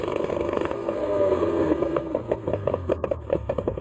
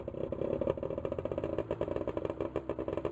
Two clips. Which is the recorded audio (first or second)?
second